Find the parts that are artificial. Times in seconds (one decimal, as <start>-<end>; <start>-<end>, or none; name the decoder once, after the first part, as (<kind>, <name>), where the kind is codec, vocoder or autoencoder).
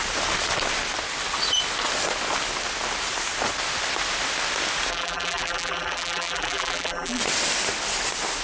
4.9-7.2 (vocoder, BigVGAN v2)